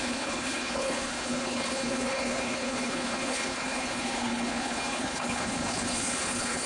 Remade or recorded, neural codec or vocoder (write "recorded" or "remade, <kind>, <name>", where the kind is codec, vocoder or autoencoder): remade, codec, HILCodec